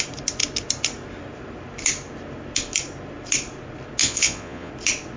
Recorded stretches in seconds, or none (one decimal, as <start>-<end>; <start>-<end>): 0.0-4.0; 4.7-5.2